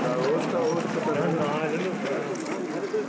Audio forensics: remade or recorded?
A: recorded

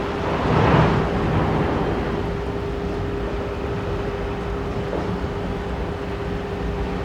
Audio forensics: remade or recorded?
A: recorded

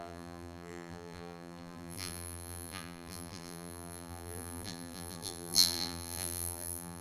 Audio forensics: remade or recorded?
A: remade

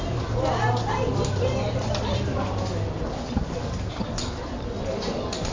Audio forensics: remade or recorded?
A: recorded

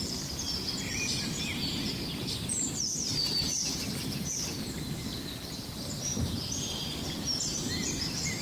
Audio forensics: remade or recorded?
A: remade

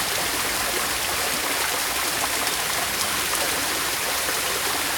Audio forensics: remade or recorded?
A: recorded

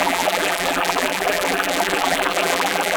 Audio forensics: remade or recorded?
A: remade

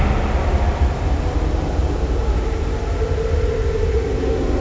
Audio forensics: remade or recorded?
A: recorded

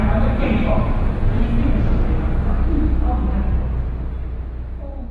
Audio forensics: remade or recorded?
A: recorded